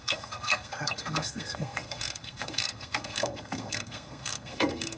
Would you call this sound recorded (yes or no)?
no